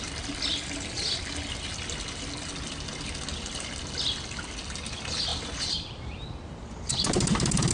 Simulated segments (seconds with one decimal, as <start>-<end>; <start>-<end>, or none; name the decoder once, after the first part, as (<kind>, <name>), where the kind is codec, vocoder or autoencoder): 5.3-7.7 (vocoder, BigVGAN v2)